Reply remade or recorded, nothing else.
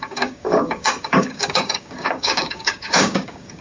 remade